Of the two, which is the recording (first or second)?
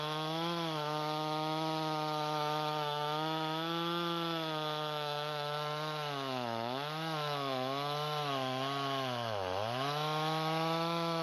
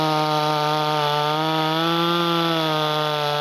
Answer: second